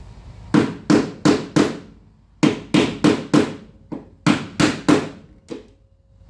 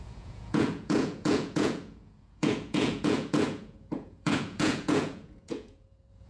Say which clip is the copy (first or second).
second